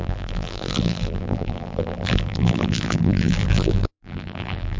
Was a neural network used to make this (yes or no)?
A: yes